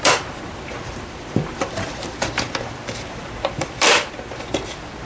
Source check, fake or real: fake